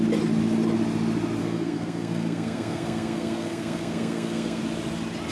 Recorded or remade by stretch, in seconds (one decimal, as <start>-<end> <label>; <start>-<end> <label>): 0.0-1.4 recorded; 1.4-4.6 remade; 4.6-5.3 recorded